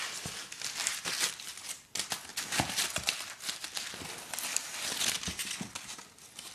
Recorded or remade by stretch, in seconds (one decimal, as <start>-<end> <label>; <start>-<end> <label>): 0.0-6.5 recorded